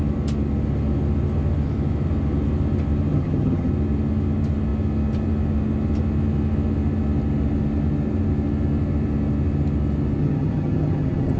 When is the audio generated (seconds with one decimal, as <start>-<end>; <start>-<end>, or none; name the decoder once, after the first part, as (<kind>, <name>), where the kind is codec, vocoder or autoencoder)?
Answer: 3.1-3.7 (vocoder, HiFi-GAN); 10.2-11.4